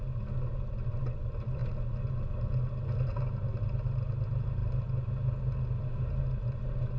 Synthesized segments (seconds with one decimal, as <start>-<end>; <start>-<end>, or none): none